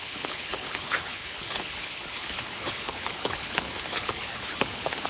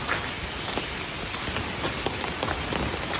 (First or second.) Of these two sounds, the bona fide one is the second